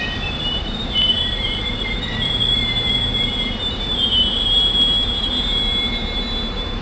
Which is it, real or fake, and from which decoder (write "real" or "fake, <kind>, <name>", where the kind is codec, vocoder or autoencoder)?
fake, vocoder, BigVGAN v2